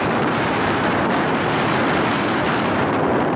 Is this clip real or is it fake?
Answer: fake